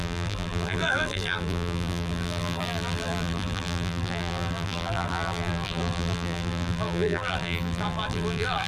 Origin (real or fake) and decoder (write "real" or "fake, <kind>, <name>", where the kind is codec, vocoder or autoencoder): fake, vocoder, BigVGAN v2